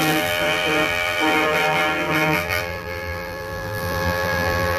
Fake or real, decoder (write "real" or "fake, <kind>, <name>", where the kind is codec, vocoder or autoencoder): fake, vocoder, BigVGAN v2